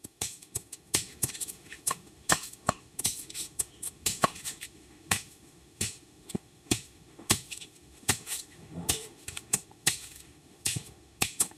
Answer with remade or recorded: remade